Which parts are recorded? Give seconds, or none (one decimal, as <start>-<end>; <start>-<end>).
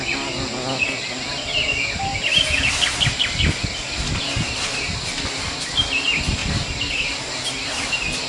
0.0-8.3